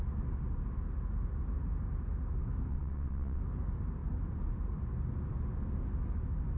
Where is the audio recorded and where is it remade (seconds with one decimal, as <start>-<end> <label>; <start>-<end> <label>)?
0.0-2.7 recorded; 2.7-3.4 remade; 3.4-6.6 recorded